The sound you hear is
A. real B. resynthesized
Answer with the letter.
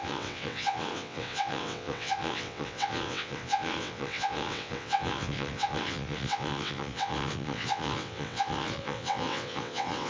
B